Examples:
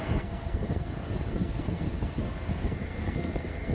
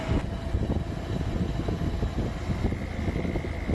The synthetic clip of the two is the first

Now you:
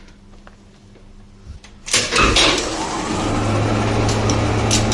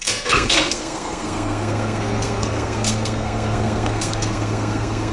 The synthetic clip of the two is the second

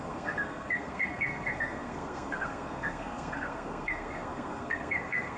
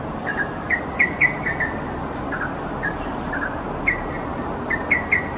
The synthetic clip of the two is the first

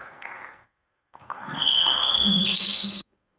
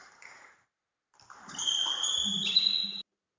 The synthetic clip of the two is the first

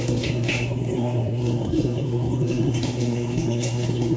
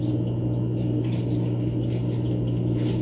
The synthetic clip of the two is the first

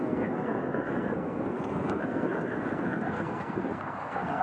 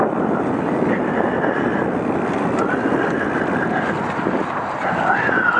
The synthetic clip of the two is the first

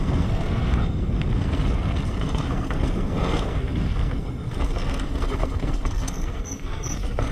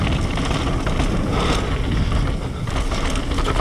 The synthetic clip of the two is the first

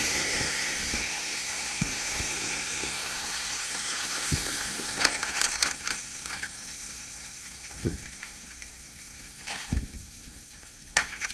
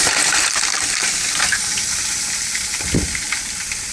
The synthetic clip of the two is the first